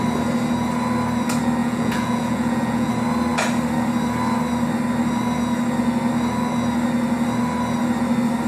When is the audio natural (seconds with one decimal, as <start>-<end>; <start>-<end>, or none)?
0.0-1.6; 2.9-8.5